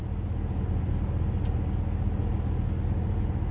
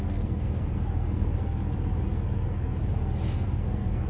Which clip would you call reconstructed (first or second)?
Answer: second